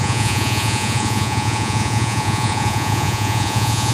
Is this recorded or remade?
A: remade